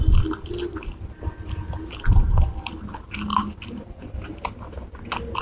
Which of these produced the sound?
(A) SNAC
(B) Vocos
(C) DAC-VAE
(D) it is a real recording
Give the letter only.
D